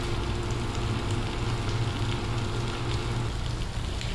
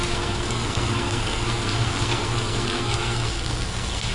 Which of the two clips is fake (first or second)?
second